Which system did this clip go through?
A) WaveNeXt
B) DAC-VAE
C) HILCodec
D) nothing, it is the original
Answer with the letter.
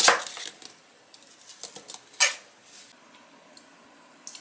D